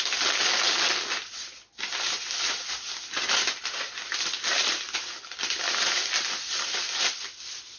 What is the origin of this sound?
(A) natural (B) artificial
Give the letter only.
A